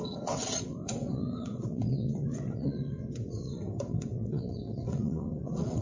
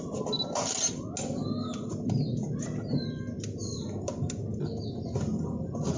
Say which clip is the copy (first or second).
first